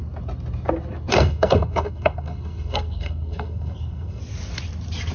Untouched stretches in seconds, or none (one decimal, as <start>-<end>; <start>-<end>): 0.0-1.1; 4.2-5.1